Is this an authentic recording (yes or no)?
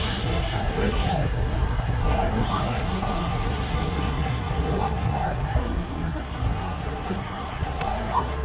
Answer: no